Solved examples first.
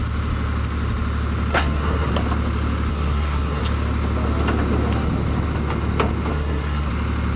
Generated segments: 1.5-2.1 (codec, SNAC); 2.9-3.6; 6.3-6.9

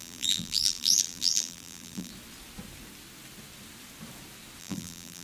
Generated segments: 0.0-2.1 (vocoder, BigVGAN v2); 4.6-5.2